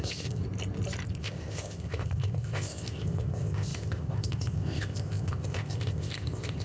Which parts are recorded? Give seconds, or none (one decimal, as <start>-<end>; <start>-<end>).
0.4-1.2